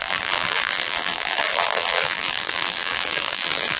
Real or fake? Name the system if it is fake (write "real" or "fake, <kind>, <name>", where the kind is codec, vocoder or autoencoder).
fake, vocoder, BigVGAN v2